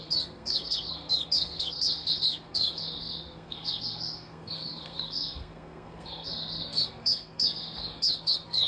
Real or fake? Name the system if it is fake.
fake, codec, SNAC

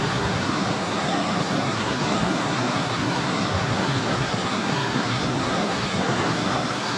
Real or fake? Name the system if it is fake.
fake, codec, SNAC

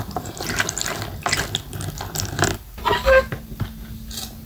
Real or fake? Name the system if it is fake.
real